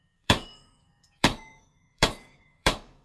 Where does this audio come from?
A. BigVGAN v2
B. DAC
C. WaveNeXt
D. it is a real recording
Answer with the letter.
B